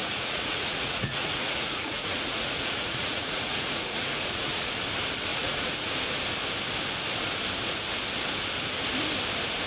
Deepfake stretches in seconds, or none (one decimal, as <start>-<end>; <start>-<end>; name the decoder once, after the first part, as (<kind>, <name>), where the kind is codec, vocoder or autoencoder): 0.0-4.7 (vocoder, Vocos); 5.3-5.9